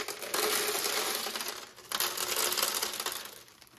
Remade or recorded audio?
recorded